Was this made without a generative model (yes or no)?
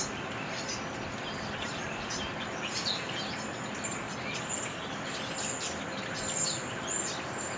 yes